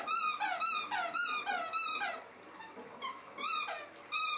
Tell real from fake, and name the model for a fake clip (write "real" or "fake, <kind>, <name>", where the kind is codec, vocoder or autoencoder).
real